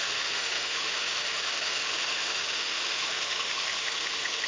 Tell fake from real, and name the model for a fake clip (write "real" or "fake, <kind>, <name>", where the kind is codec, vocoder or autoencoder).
fake, autoencoder, DAC-VAE